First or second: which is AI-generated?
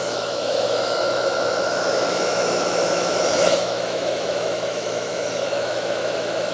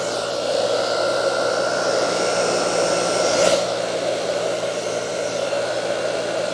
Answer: first